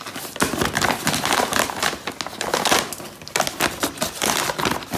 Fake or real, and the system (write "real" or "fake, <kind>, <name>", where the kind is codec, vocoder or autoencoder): real